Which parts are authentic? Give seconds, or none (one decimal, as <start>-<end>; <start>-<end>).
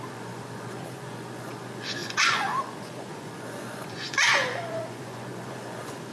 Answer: none